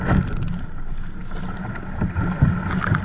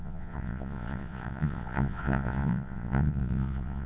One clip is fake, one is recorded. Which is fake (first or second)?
second